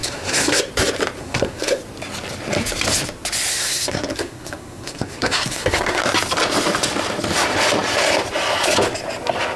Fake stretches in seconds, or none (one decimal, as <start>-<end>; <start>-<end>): 0.0-0.7; 1.2-1.8; 3.5-6.0